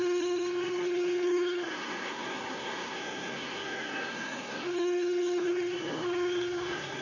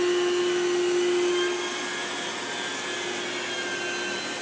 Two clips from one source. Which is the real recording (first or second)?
second